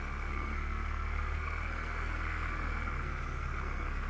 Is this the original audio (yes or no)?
no